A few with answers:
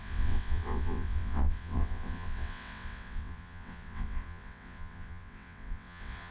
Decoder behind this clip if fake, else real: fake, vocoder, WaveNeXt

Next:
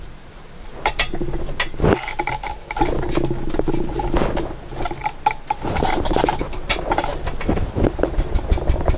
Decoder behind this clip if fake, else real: real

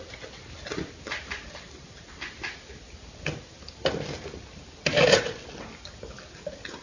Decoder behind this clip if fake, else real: real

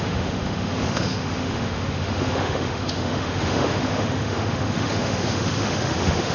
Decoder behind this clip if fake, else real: fake, autoencoder, DAC-VAE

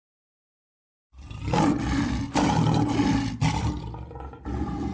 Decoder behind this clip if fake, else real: real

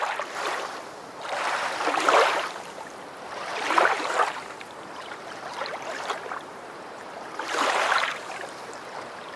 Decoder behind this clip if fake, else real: fake, vocoder, BigVGAN v2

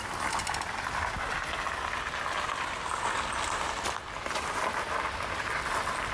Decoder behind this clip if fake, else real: real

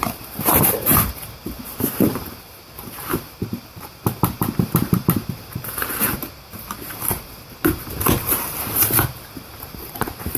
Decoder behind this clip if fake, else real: fake, vocoder, BigVGAN v2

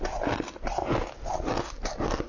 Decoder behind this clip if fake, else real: real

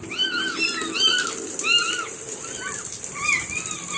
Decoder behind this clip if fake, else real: real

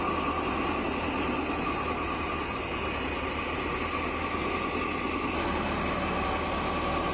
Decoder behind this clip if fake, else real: real